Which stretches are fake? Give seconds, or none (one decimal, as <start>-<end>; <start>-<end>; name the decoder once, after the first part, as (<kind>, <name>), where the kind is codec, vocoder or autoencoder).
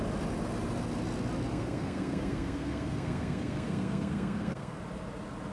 1.5-4.8 (codec, SNAC)